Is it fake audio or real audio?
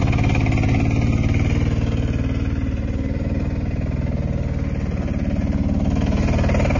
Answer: real